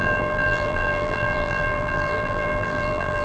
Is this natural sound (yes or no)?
no